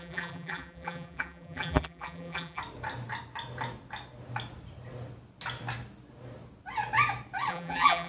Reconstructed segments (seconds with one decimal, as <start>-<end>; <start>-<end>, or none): 0.0-2.6; 7.5-8.1